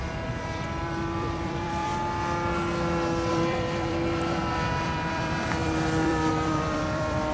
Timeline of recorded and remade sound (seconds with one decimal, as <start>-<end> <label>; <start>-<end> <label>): 0.0-1.9 remade; 1.9-3.3 recorded; 3.3-7.3 remade